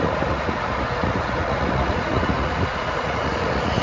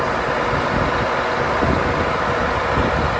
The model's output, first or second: first